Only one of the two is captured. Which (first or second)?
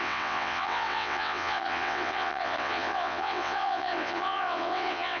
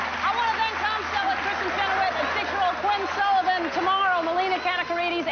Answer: second